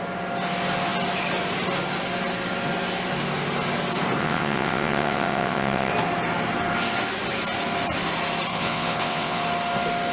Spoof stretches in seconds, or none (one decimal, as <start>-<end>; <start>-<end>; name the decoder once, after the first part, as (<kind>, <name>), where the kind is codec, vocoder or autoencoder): 4.2-5.9 (vocoder, WaveNeXt); 8.5-9.4